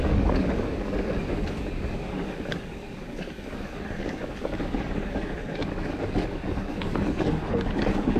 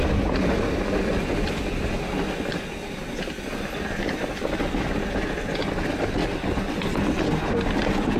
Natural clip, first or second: second